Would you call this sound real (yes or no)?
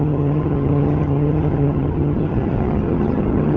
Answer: no